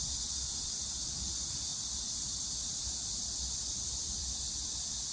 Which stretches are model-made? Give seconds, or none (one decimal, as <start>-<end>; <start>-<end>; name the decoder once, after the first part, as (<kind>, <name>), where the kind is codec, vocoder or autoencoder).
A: 4.0-4.5 (vocoder, BigVGAN v2)